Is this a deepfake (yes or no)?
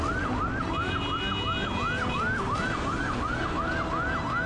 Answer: no